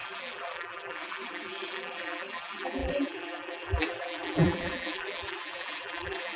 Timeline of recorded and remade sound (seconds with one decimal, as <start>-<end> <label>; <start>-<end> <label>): 0.0-6.4 remade